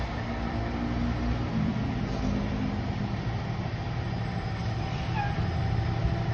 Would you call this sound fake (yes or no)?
no